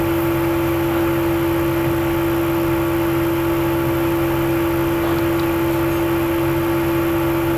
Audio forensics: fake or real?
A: real